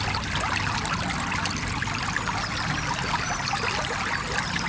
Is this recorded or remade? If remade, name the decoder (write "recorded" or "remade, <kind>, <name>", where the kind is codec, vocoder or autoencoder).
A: recorded